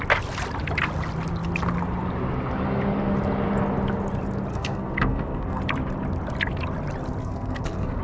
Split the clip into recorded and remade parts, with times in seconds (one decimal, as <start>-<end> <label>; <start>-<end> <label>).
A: 0.0-4.5 recorded; 4.5-5.6 remade; 5.6-7.2 recorded; 7.2-8.0 remade